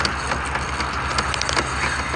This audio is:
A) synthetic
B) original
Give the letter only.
B